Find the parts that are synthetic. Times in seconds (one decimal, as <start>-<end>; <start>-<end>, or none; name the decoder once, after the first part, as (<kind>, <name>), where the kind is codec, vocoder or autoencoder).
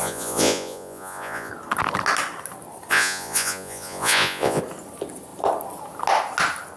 0.0-1.5 (vocoder, Vocos); 2.9-4.6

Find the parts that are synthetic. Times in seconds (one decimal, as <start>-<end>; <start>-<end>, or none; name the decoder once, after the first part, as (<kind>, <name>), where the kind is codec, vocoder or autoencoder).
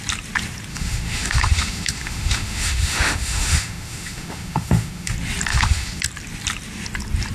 0.7-5.1 (autoencoder, DAC-VAE); 5.5-6.0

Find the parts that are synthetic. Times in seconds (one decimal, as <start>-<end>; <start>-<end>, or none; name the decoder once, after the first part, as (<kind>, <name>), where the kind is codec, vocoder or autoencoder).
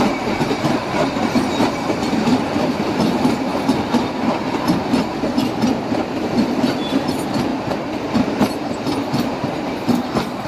0.0-3.5 (vocoder, BigVGAN v2); 5.5-10.5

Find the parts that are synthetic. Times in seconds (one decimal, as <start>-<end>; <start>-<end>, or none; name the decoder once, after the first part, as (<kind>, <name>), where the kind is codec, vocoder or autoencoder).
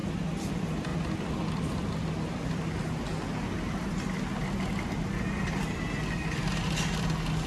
none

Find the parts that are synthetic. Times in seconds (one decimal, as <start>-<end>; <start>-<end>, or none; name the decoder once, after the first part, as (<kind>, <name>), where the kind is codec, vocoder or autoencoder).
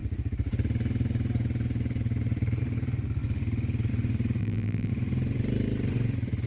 4.4-4.9 (vocoder, BigVGAN v2)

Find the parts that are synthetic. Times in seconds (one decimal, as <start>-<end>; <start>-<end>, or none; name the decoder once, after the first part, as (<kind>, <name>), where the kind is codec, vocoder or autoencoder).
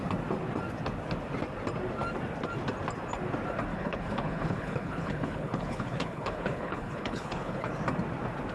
3.7-7.7 (codec, HILCodec)